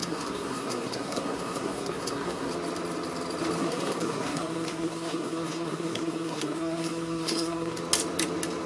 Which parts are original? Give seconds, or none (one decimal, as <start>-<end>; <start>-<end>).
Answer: 2.5-3.6; 7.8-8.7